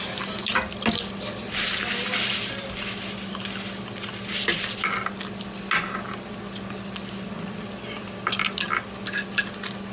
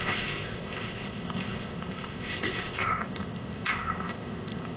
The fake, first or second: second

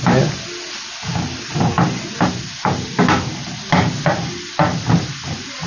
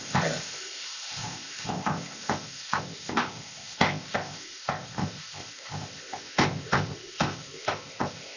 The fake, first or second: second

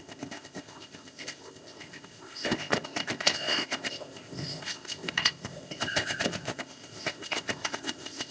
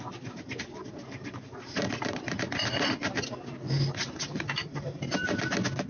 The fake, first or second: first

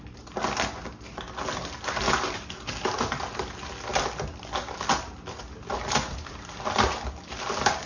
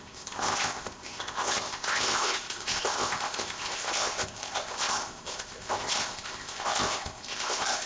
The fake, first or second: second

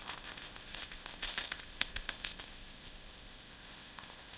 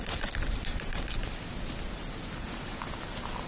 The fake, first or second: first